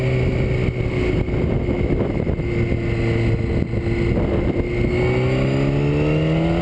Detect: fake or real real